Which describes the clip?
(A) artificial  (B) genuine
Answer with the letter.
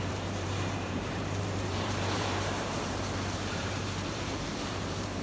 A